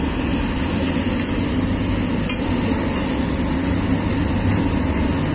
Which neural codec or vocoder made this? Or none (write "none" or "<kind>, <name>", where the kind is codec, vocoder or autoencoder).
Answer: none